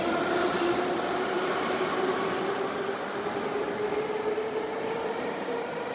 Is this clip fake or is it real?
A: real